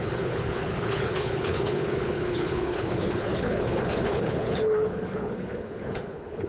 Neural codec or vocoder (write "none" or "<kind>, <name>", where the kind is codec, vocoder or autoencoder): codec, HILCodec